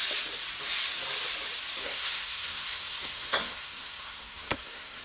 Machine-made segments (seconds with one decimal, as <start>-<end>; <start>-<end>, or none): 1.8-5.0